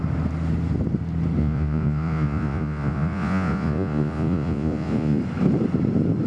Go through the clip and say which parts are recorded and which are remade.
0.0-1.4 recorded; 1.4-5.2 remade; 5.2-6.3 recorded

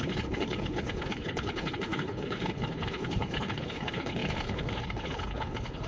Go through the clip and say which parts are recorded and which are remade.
0.0-5.9 remade

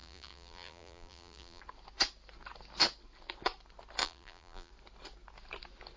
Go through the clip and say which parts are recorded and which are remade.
0.0-1.6 remade; 1.6-4.0 recorded; 4.0-4.7 remade; 4.7-6.0 recorded

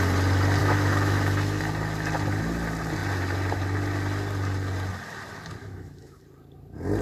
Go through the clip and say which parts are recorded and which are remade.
0.0-0.6 recorded; 0.6-1.6 remade; 1.6-5.6 recorded; 5.6-6.2 remade; 6.2-7.0 recorded

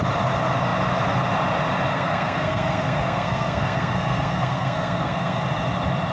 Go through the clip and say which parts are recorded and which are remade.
0.0-1.9 recorded; 1.9-5.4 remade; 5.4-6.1 recorded

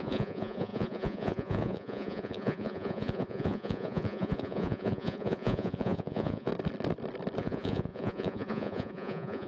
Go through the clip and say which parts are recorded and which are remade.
0.0-6.5 remade; 6.5-7.4 recorded; 7.4-9.5 remade

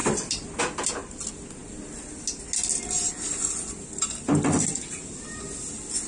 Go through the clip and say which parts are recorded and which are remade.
0.0-0.6 remade; 0.6-6.1 recorded

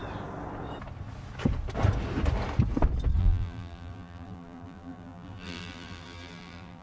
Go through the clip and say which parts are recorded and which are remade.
0.0-3.2 recorded; 3.2-6.8 remade